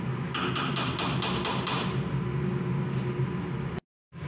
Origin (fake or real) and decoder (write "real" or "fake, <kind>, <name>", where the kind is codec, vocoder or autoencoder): real